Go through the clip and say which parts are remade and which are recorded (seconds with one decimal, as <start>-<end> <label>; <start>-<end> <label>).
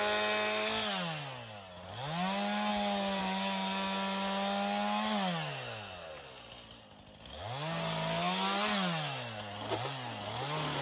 0.0-10.8 recorded